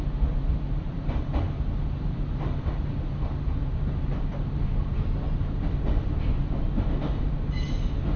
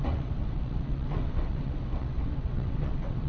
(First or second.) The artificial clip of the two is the second